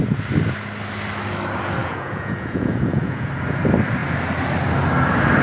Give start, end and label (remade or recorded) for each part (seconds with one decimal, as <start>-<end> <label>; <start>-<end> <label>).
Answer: 0.0-1.8 recorded; 1.8-3.3 remade; 3.3-5.4 recorded

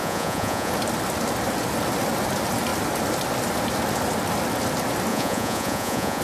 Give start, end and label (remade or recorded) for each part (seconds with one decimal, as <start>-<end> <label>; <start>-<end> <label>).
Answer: 0.0-0.7 remade; 0.7-5.1 recorded; 5.1-6.2 remade

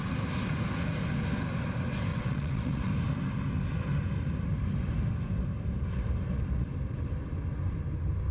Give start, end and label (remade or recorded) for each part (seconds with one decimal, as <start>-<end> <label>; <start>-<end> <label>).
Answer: 0.0-2.1 recorded; 2.1-2.9 remade; 2.9-8.3 recorded

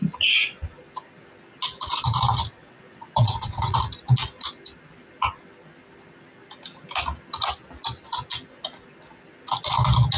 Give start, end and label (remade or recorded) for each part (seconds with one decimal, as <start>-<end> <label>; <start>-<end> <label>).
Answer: 0.0-2.6 recorded; 2.6-3.8 remade; 3.8-10.2 recorded

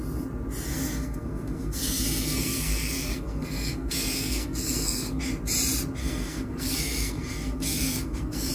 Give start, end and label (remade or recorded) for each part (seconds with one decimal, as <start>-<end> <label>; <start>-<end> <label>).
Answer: 0.0-0.7 recorded; 0.7-5.2 remade; 5.2-6.0 recorded; 6.0-8.5 remade

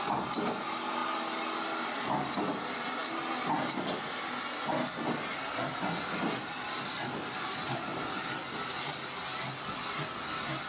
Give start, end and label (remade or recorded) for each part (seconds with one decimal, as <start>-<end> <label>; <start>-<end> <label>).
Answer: 0.0-10.7 recorded